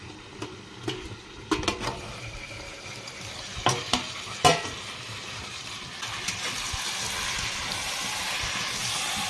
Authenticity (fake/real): real